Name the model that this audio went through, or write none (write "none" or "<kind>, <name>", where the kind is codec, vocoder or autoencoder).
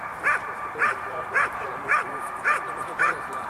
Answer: vocoder, BigVGAN v2